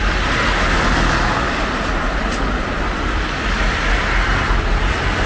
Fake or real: real